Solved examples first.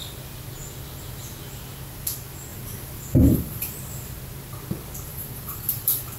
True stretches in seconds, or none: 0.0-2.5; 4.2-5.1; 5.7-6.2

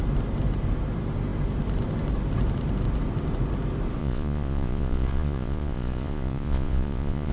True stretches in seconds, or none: 0.0-4.0

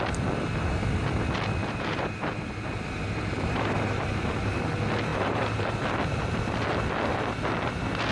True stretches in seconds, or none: 0.0-1.6; 4.5-5.1; 5.7-8.1

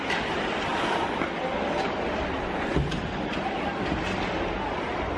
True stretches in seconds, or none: 0.0-5.2

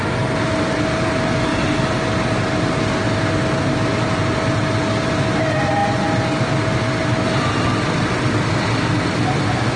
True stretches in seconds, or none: 0.0-9.8